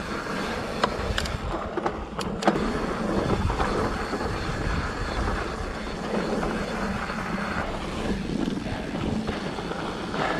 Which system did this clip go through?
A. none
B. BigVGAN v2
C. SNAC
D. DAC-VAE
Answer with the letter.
A